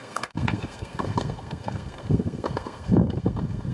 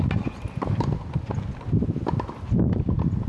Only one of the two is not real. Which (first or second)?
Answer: first